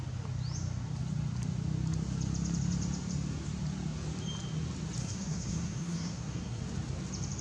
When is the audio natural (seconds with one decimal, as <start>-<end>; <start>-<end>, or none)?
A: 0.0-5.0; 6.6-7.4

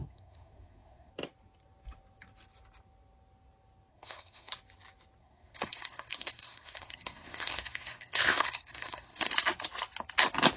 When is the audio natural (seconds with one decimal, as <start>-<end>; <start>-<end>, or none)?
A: 1.1-3.9; 4.5-5.2; 9.3-10.6

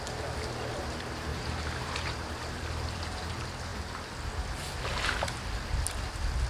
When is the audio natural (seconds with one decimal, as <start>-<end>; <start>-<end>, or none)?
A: 0.0-1.3; 3.2-6.5

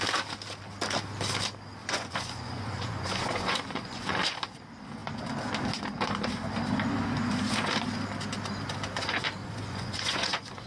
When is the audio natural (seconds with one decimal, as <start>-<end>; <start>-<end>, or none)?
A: 0.0-1.8; 4.2-9.4

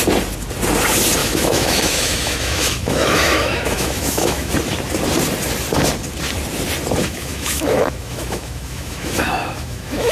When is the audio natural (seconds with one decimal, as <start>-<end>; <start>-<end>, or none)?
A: 0.0-1.2; 4.5-7.0

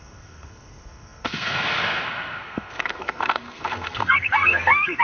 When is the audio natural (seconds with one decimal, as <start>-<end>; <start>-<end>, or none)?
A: none